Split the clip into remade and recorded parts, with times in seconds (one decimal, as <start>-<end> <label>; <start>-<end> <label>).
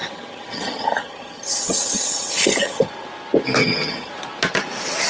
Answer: 0.0-2.9 remade; 2.9-3.6 recorded; 3.6-4.1 remade; 4.1-5.1 recorded